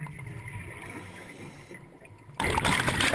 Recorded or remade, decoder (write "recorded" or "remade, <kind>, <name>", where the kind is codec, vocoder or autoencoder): recorded